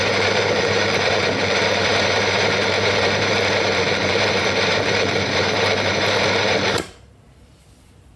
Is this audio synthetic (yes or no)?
yes